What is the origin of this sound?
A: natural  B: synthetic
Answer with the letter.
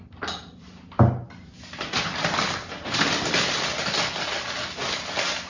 A